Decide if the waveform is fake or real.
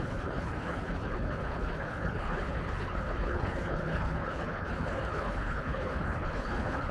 fake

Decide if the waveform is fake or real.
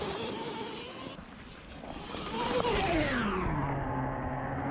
real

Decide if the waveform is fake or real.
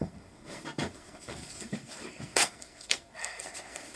fake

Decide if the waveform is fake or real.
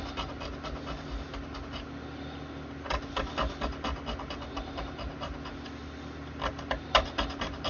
real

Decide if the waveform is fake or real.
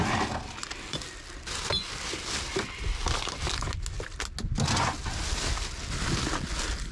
real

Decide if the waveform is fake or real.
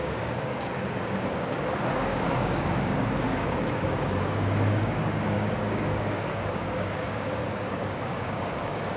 fake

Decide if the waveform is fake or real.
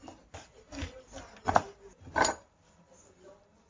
real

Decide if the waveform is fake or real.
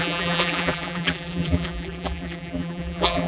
fake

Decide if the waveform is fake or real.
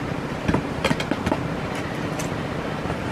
real